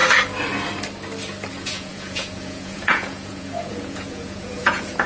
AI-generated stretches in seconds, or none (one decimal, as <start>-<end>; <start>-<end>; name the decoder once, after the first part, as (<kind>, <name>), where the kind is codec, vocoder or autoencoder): 1.5-5.1 (vocoder, Vocos)